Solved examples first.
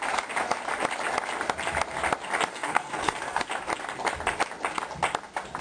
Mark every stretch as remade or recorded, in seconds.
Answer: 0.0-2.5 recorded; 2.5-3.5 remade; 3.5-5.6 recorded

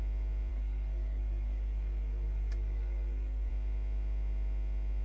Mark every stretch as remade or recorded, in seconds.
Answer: 0.0-0.5 recorded; 0.5-3.5 remade; 3.5-5.0 recorded

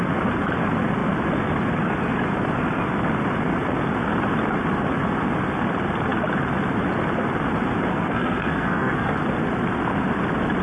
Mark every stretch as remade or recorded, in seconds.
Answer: 0.0-7.9 recorded; 7.9-9.1 remade; 9.1-10.6 recorded

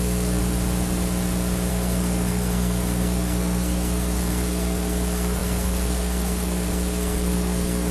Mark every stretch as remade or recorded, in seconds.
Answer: 0.0-0.4 remade; 0.4-1.7 recorded; 1.7-7.9 remade

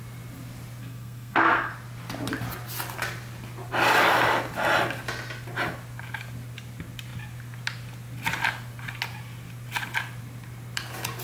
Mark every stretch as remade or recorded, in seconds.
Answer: 0.0-0.8 recorded; 0.8-1.7 remade; 1.7-11.2 recorded

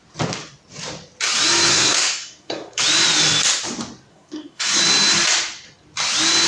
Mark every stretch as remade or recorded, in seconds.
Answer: 0.0-1.7 recorded; 1.7-2.8 remade; 2.8-4.1 recorded; 4.1-4.8 remade; 4.8-6.5 recorded

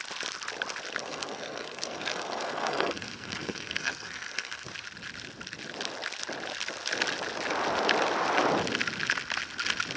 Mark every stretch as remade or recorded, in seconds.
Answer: 0.0-1.0 recorded; 1.0-4.7 remade; 4.7-10.0 recorded

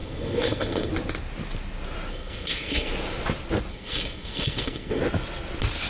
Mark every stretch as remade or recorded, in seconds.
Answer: 0.0-0.9 remade; 0.9-2.1 recorded; 2.1-2.9 remade; 2.9-3.7 recorded; 3.7-5.0 remade; 5.0-5.9 recorded